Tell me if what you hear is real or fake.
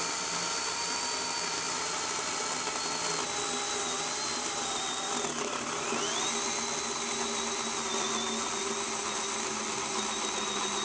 real